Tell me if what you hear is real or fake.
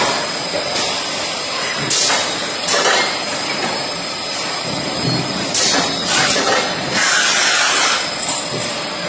fake